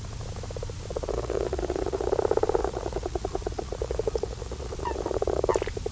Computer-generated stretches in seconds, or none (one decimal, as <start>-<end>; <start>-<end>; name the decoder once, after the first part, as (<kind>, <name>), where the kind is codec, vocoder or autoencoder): 0.9-2.1 (vocoder, Vocos); 2.6-5.5